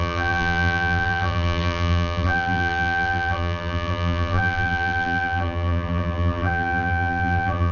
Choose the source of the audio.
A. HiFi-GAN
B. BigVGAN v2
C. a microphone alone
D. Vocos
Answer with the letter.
B